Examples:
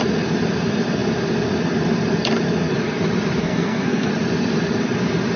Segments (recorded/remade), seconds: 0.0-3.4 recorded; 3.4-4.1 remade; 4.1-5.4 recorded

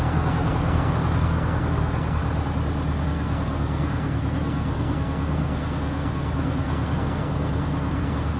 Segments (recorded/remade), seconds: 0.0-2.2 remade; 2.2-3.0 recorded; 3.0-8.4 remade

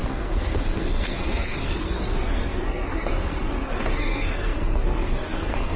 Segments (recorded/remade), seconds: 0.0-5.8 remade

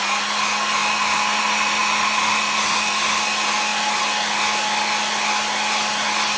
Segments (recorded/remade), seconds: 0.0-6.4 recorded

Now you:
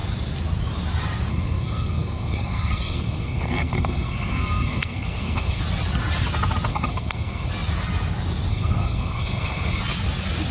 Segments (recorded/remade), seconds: 0.0-1.3 recorded; 1.3-5.6 remade; 5.6-6.7 recorded; 6.7-7.5 remade; 7.5-8.5 recorded; 8.5-9.8 remade; 9.8-10.5 recorded